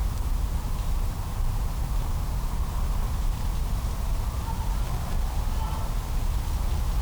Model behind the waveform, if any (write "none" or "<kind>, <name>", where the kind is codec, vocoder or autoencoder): none